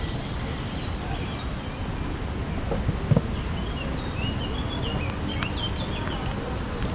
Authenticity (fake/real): real